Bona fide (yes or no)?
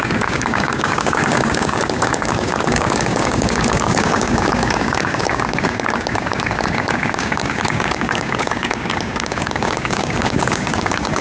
no